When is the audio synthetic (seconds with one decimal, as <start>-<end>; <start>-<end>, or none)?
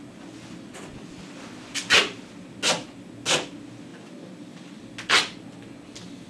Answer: 0.9-1.4; 3.9-4.8